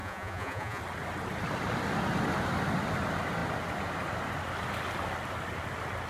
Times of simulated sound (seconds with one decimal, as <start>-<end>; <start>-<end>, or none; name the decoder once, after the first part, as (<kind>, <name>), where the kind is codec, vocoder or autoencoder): 0.0-0.8 (vocoder, Vocos)